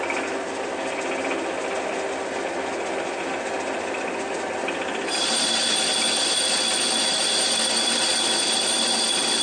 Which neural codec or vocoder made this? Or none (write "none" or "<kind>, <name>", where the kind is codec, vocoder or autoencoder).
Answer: none